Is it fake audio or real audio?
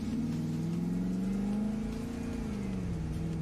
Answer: real